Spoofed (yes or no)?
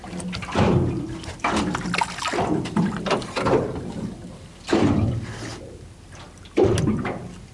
yes